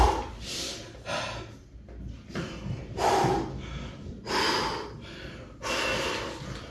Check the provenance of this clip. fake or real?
real